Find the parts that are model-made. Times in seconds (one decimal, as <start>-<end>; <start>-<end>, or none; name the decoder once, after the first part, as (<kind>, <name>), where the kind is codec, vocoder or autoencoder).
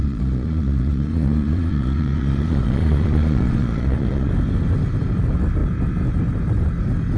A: 0.0-4.3 (vocoder, Vocos)